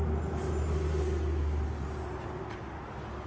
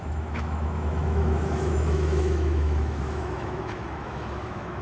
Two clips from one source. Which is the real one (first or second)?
first